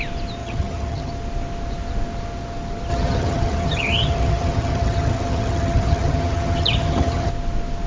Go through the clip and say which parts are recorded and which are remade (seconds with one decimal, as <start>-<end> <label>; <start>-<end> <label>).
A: 0.0-0.4 recorded; 0.4-1.1 remade; 1.1-2.9 recorded; 2.9-7.3 remade; 7.3-7.9 recorded